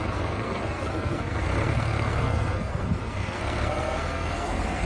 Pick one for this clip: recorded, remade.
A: remade